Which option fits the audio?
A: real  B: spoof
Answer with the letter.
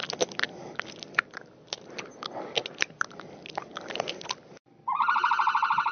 A